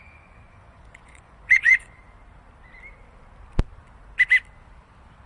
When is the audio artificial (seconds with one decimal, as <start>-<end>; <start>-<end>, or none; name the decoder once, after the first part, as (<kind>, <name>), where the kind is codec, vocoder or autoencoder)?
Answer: 0.0-2.0 (vocoder, Vocos)